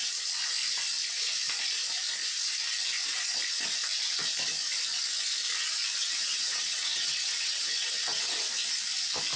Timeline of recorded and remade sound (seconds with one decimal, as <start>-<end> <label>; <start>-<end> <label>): 0.0-6.0 recorded; 6.0-8.4 remade; 8.4-9.4 recorded